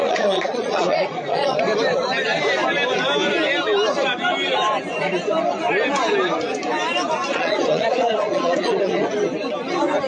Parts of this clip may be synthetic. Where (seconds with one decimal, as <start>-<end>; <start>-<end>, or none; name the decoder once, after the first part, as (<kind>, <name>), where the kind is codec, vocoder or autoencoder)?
0.0-1.6 (vocoder, Vocos); 7.3-9.1